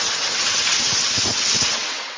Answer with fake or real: fake